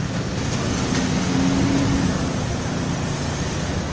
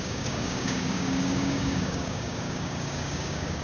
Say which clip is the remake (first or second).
second